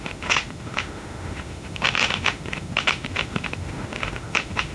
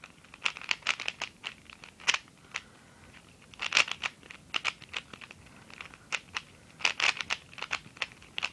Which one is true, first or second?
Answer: second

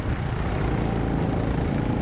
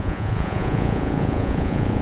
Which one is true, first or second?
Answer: first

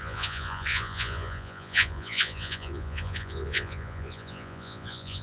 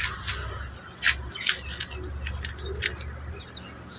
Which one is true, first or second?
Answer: second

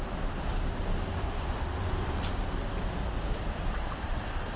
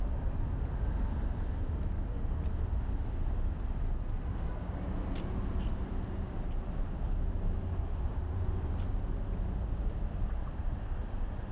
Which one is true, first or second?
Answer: second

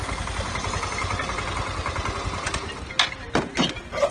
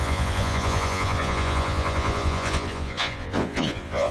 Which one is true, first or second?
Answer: first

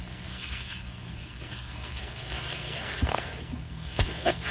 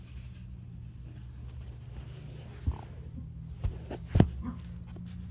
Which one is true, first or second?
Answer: second